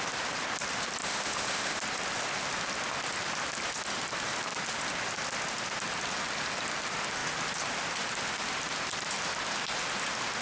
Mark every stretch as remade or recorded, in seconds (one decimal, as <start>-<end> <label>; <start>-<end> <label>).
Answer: 0.0-1.0 recorded; 1.0-1.8 remade; 1.8-10.4 recorded